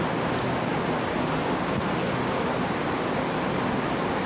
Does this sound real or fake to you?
real